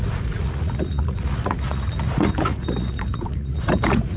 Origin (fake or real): fake